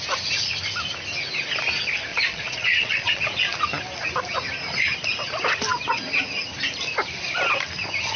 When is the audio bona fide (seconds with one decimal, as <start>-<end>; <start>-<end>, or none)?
0.0-2.1; 3.2-8.2